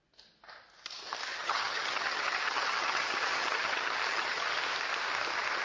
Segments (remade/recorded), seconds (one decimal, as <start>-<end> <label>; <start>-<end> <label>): 0.0-1.3 recorded; 1.3-4.5 remade; 4.5-5.6 recorded